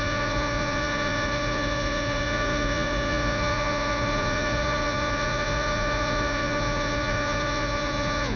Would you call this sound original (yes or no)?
no